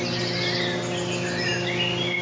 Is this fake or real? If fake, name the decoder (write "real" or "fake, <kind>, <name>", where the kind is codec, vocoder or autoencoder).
real